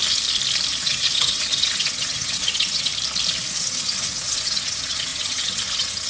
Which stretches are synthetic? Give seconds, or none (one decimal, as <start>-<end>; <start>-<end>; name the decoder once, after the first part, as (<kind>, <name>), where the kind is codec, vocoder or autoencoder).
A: 0.7-2.9 (vocoder, WaveNeXt); 3.6-6.1

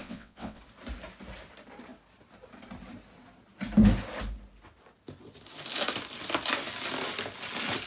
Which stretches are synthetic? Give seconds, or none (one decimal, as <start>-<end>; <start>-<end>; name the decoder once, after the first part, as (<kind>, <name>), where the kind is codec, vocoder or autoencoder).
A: 0.0-0.6 (vocoder, WaveNeXt)

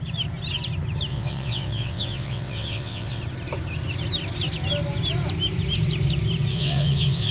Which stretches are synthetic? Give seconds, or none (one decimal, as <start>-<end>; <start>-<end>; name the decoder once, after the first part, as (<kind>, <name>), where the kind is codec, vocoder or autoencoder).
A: 1.1-3.2 (vocoder, WaveNeXt); 6.5-7.3